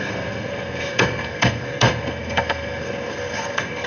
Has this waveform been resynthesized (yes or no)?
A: yes